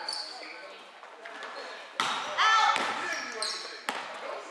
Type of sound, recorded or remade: recorded